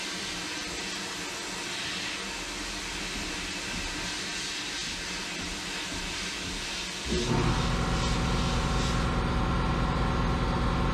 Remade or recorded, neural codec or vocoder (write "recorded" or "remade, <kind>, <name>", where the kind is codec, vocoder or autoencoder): recorded